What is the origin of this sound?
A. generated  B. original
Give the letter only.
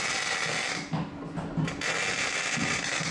B